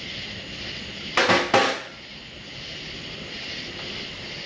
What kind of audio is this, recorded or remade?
recorded